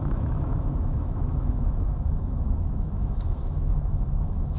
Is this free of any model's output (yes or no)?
no